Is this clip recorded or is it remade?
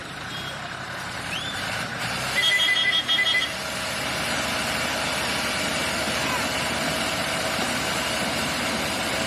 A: remade